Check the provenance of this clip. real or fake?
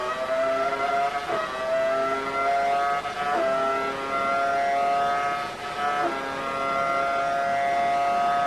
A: real